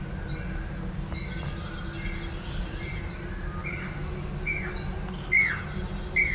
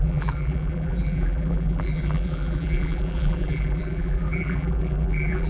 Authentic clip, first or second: first